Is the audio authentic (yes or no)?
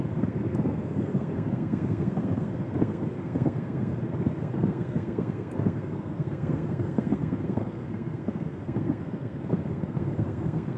no